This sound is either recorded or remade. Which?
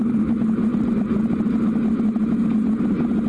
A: recorded